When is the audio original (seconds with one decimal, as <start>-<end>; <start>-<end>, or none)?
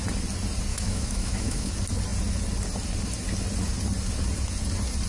0.0-0.7; 1.7-5.1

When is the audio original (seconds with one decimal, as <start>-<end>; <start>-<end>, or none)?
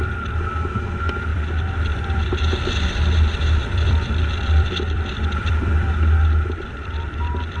0.0-1.3; 5.9-7.6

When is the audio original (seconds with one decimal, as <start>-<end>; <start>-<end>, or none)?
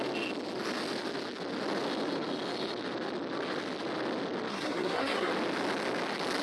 0.0-4.5; 5.3-6.4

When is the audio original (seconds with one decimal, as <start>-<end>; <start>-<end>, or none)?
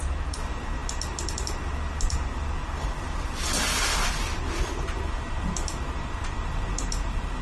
0.0-7.4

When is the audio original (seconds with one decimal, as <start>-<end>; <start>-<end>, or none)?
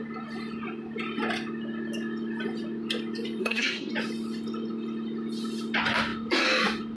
0.0-3.4; 3.9-7.0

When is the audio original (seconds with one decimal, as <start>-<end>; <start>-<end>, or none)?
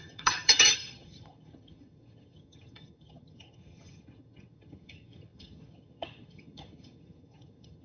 none